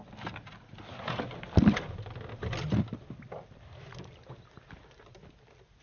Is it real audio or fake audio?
real